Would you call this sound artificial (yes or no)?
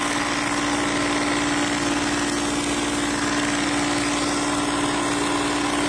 no